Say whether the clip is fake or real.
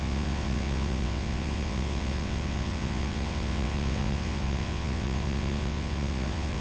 fake